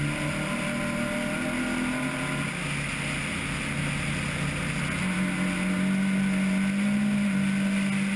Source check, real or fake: real